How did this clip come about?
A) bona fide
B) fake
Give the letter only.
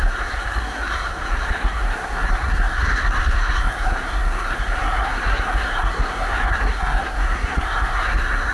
B